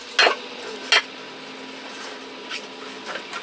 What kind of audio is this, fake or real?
real